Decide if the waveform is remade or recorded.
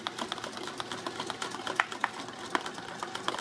recorded